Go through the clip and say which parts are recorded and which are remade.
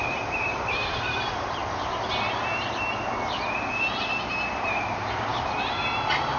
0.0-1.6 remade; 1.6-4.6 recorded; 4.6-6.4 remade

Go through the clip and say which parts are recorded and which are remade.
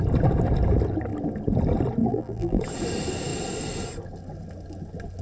0.0-2.0 recorded; 2.0-2.6 remade; 2.6-5.2 recorded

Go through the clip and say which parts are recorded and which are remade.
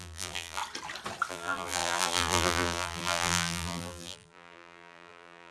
0.0-0.6 remade; 0.6-1.3 recorded; 1.3-5.5 remade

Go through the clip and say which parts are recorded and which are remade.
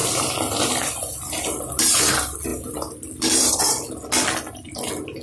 0.0-2.1 remade; 2.1-2.5 recorded; 2.5-3.6 remade; 3.6-5.2 recorded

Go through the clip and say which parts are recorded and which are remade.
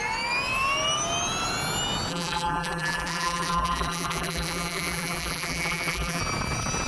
0.0-2.1 recorded; 2.1-6.2 remade; 6.2-6.9 recorded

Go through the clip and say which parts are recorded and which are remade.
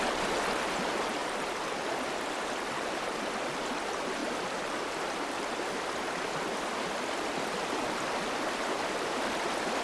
0.0-1.2 recorded; 1.2-3.1 remade; 3.1-9.8 recorded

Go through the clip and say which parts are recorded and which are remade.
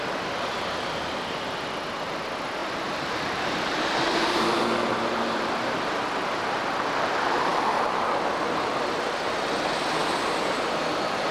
0.0-2.6 recorded; 2.6-5.9 remade; 5.9-11.3 recorded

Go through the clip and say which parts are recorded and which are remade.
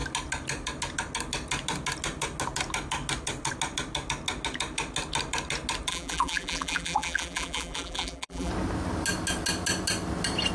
0.0-5.9 recorded; 5.9-8.5 remade; 8.5-10.5 recorded